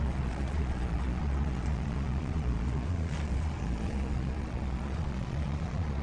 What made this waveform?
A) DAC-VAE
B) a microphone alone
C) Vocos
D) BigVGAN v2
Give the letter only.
C